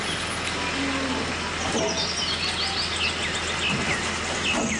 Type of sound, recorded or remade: recorded